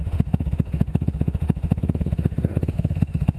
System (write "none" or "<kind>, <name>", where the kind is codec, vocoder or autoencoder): autoencoder, DAC-VAE